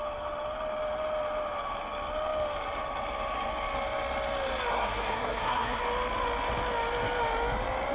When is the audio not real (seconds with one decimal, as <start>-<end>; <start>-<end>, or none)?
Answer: 4.7-5.8